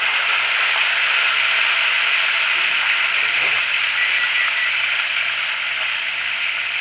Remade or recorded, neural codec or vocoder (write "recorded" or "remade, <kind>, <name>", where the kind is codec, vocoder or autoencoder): recorded